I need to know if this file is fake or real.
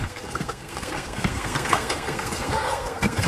fake